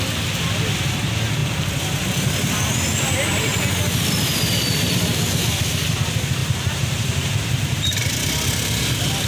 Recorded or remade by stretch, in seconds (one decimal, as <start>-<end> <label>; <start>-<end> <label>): 0.0-6.4 recorded; 6.4-7.8 remade; 7.8-9.3 recorded